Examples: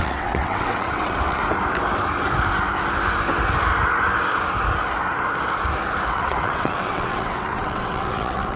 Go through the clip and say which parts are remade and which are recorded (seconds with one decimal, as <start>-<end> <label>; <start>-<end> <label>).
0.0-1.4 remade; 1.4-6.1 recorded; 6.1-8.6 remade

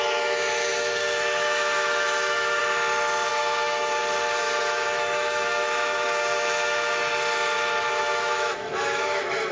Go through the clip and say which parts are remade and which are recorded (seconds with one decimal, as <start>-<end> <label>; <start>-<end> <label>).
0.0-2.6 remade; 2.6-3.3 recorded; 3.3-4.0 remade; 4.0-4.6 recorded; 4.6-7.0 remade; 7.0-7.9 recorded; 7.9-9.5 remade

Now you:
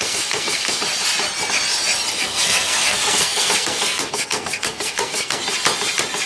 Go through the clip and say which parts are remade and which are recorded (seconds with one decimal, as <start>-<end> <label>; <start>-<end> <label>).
0.0-0.8 remade; 0.8-2.2 recorded; 2.2-5.4 remade; 5.4-6.3 recorded

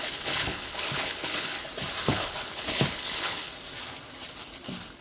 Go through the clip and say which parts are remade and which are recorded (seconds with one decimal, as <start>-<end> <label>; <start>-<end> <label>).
0.0-1.5 remade; 1.5-2.0 recorded; 2.0-3.5 remade; 3.5-5.0 recorded